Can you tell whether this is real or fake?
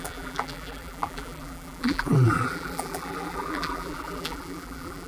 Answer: fake